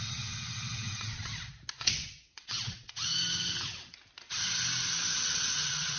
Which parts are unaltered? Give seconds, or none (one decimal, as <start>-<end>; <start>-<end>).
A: 1.3-1.8; 3.1-5.2